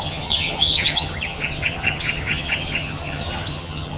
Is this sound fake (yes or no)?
yes